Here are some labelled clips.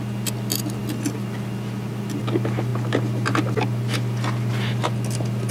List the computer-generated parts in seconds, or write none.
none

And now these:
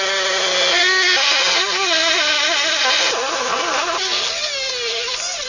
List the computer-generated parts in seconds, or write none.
none

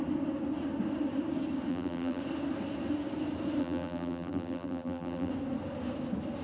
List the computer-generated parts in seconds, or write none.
1.7-2.2 (vocoder, BigVGAN v2); 3.6-5.3

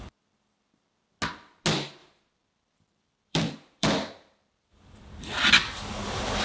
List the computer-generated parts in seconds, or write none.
2.0-5.2 (vocoder, BigVGAN v2)

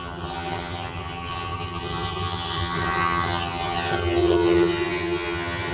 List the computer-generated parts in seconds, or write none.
0.0-5.7 (vocoder, HiFi-GAN)